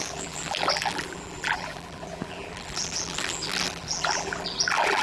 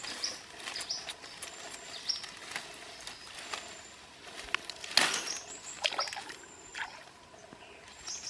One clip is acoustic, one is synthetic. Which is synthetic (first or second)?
first